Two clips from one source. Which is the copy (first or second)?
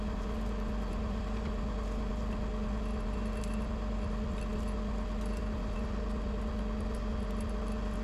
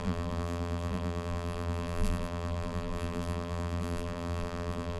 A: second